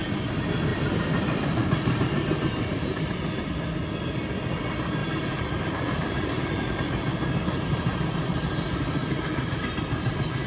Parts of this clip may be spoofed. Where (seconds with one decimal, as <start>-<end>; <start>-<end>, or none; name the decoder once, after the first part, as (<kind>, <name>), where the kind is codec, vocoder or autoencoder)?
0.7-3.5 (vocoder, BigVGAN v2); 5.0-7.6; 9.0-9.6